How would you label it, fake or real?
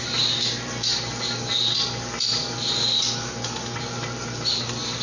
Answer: real